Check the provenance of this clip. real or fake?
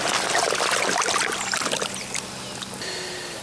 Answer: real